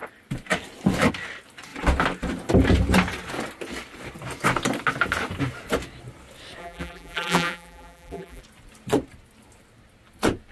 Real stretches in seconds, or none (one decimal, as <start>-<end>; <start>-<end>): 0.0-6.6; 8.4-10.5